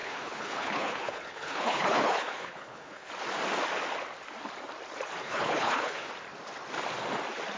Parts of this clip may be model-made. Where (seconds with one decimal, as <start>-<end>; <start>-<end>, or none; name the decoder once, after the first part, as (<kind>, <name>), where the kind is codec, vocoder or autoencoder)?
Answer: 0.0-3.1 (codec, HILCodec); 5.2-6.1